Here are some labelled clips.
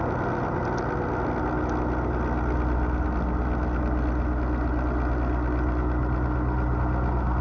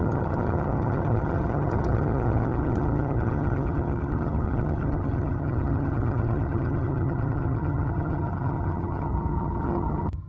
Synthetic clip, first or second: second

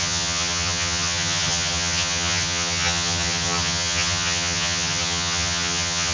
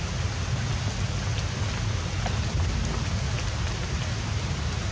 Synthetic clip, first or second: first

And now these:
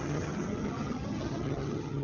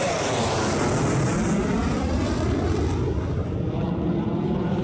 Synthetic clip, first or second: first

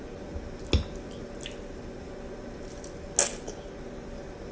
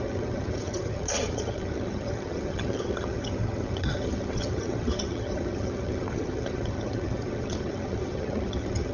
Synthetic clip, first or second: second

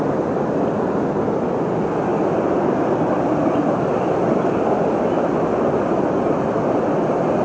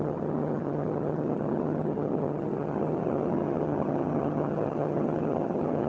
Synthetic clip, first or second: second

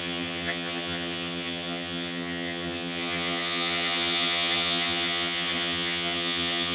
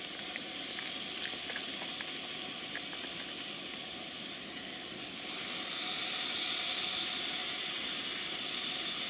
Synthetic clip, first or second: first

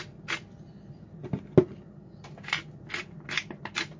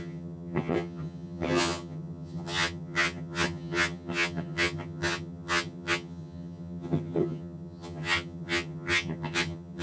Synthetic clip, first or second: second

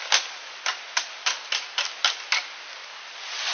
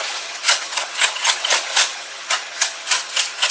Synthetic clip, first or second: second